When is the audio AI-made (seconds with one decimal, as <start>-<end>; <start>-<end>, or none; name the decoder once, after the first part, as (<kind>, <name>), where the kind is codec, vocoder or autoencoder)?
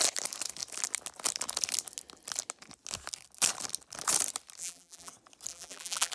4.6-5.1 (vocoder, BigVGAN v2); 5.5-6.1